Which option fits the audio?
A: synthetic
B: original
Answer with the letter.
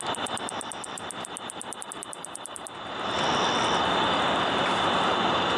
B